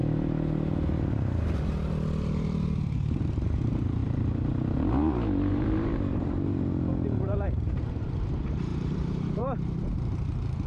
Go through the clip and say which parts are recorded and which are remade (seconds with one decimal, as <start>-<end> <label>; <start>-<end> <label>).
0.0-2.2 recorded; 2.2-10.7 remade